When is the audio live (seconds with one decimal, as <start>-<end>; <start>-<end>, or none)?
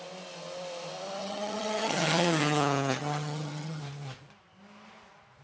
0.0-1.2; 3.8-5.4